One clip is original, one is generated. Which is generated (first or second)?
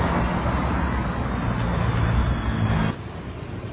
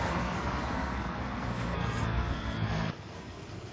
second